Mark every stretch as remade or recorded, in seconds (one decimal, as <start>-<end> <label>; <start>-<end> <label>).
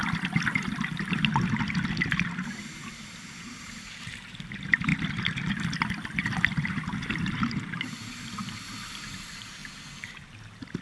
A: 0.0-2.1 recorded; 2.1-4.9 remade; 4.9-7.2 recorded; 7.2-9.6 remade; 9.6-10.8 recorded